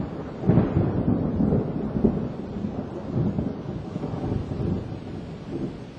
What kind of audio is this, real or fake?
real